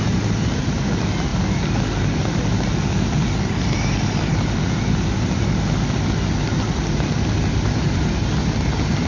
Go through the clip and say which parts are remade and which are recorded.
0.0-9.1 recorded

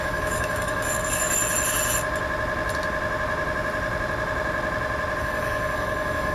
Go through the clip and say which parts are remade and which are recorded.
0.0-1.4 remade; 1.4-5.2 recorded; 5.2-6.3 remade

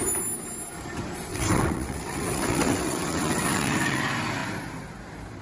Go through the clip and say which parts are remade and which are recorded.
0.0-1.3 recorded; 1.3-4.0 remade; 4.0-5.4 recorded

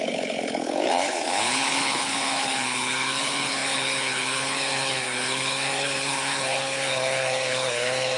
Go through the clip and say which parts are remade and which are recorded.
0.0-8.2 remade